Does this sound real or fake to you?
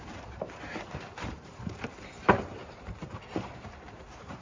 fake